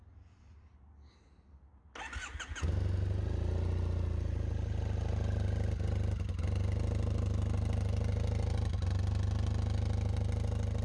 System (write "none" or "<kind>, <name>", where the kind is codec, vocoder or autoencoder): none